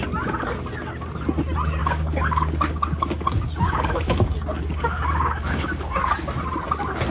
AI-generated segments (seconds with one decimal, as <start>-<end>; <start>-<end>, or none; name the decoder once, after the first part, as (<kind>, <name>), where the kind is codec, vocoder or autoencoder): 1.8-6.1 (codec, DAC)